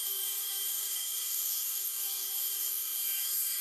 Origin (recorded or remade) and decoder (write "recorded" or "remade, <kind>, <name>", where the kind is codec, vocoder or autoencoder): remade, codec, DAC